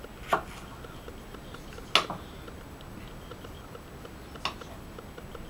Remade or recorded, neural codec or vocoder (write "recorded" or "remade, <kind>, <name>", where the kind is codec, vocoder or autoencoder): recorded